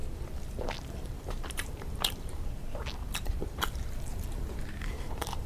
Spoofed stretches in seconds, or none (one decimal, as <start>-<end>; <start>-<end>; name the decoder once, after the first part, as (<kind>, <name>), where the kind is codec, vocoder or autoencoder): 0.6-5.5 (vocoder, BigVGAN v2)